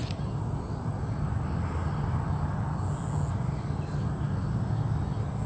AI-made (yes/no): no